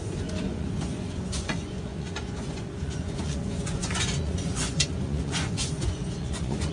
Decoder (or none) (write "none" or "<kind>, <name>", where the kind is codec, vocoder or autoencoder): vocoder, Vocos